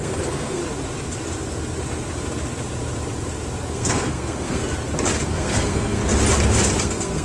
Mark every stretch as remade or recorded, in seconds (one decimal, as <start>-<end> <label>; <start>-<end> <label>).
0.0-0.6 remade; 0.6-3.7 recorded; 3.7-4.6 remade; 4.6-5.3 recorded; 5.3-6.0 remade; 6.0-6.8 recorded; 6.8-7.2 remade